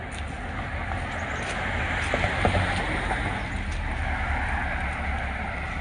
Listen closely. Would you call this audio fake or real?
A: real